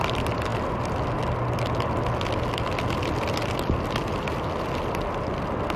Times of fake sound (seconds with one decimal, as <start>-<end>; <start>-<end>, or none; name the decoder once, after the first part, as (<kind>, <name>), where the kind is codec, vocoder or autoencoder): none